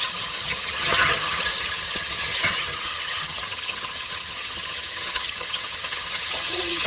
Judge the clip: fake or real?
fake